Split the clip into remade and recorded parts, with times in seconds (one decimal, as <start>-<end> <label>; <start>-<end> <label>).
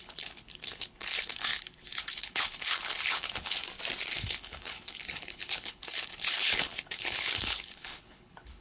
0.0-3.6 remade; 3.6-4.2 recorded; 4.2-8.6 remade